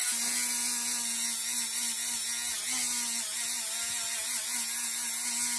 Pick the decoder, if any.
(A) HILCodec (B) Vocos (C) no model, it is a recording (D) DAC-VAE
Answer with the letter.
C